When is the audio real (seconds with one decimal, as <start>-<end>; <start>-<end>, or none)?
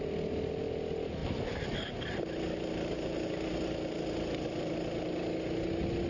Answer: 0.0-6.1